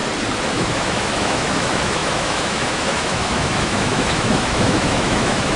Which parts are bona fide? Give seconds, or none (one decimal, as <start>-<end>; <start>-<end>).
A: 0.0-0.5